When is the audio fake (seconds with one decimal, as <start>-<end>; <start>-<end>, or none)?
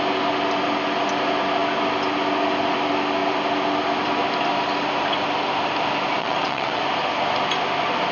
6.2-6.8